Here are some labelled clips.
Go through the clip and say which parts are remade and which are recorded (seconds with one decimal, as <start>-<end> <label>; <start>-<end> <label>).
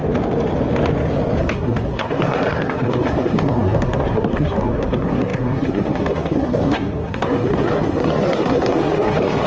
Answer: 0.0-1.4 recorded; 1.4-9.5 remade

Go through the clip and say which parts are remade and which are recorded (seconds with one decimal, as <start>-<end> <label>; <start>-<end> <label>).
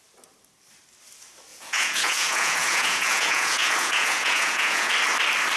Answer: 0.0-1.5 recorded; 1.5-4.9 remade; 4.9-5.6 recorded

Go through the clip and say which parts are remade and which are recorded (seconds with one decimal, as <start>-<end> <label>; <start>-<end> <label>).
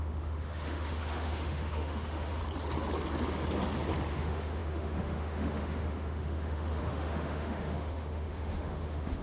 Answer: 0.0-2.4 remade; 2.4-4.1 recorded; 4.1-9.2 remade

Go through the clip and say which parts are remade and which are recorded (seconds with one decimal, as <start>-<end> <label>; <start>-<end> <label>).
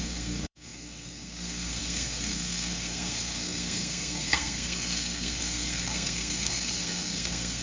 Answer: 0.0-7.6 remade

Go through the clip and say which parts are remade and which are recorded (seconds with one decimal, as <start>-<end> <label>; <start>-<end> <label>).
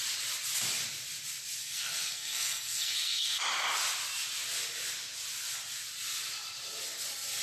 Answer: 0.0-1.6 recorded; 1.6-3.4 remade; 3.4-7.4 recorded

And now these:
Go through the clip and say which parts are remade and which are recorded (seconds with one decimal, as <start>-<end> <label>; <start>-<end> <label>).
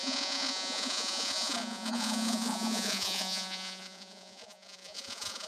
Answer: 0.0-5.5 remade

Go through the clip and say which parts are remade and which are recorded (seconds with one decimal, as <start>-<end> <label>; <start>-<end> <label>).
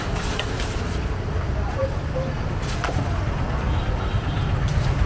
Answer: 0.0-5.1 recorded